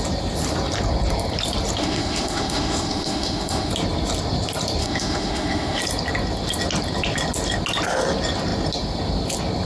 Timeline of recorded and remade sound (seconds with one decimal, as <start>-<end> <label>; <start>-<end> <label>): 0.0-1.8 recorded; 1.8-3.7 remade; 3.7-4.8 recorded; 4.8-5.8 remade; 5.8-9.7 recorded